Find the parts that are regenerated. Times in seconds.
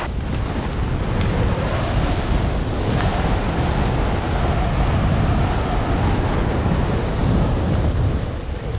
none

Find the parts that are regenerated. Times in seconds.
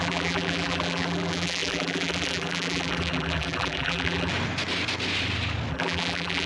0.0-4.3 (vocoder, BigVGAN v2); 5.7-6.5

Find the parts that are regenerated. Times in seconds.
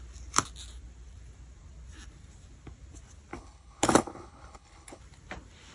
3.3-5.0 (codec, HILCodec)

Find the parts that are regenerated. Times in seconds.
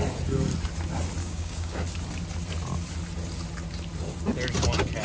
1.2-1.8 (codec, DAC)